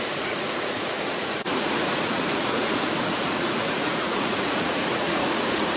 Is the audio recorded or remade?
remade